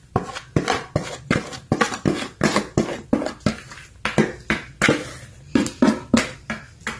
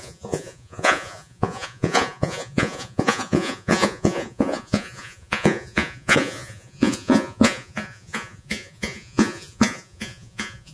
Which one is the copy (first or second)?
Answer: second